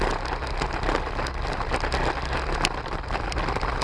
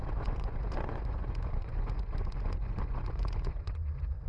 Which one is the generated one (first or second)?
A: second